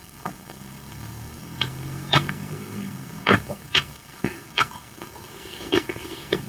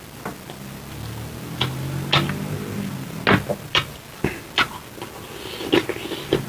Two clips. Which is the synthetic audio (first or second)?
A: first